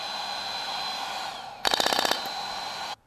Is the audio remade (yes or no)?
no